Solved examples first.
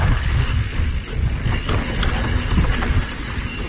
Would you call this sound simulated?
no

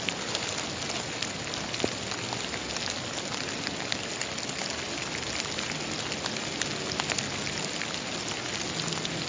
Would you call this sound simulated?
no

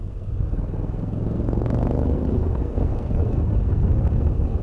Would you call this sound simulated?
yes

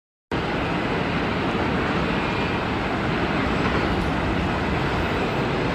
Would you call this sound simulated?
no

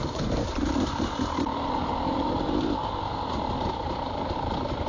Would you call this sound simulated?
yes